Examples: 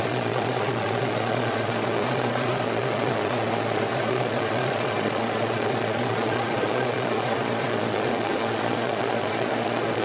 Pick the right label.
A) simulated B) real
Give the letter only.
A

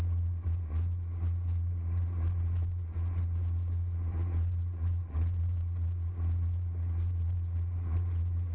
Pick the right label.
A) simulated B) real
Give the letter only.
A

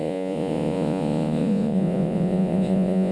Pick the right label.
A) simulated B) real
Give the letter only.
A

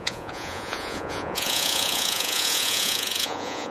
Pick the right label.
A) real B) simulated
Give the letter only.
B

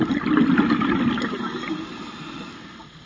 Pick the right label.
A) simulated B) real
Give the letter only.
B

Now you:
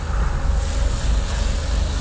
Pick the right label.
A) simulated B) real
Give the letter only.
B